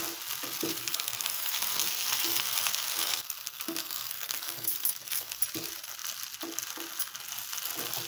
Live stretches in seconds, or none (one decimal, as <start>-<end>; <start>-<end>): 0.0-0.7; 5.4-8.1